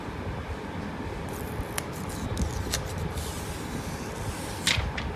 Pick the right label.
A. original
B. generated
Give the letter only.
A